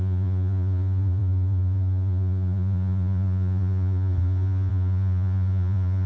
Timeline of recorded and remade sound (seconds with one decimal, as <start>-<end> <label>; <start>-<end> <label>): 0.0-6.1 remade